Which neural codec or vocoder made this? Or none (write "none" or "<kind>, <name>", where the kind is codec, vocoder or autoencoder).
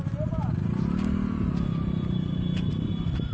none